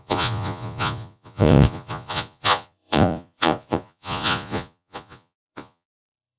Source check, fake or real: fake